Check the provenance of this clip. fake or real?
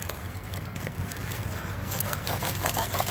fake